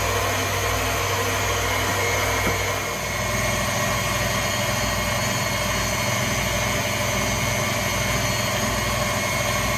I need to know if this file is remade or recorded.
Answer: recorded